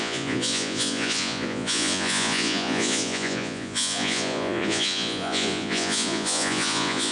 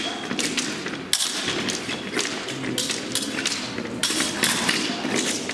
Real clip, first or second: second